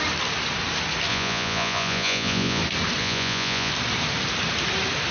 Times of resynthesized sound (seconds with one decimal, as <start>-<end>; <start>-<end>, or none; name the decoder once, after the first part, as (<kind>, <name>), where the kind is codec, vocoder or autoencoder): 1.1-2.6 (vocoder, Vocos); 3.0-3.7